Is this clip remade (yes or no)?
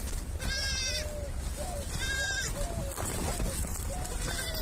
no